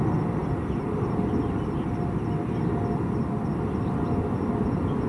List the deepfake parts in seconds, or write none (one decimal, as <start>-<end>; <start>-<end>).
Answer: none

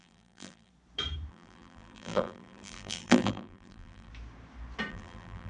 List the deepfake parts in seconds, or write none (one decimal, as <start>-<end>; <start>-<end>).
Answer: 0.0-0.7; 1.3-4.1; 4.9-5.5

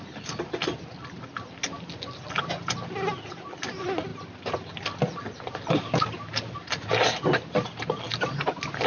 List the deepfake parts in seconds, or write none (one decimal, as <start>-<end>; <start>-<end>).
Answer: none